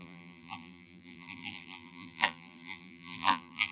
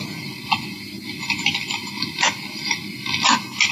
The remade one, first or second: first